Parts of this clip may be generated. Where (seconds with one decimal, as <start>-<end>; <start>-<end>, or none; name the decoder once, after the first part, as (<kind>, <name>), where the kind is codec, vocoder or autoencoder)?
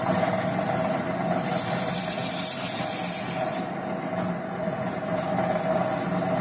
none